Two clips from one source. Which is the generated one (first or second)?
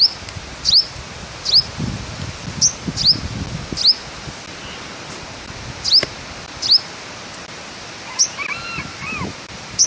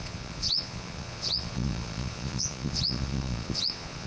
second